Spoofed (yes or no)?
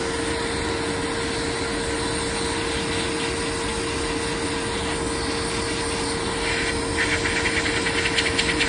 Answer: no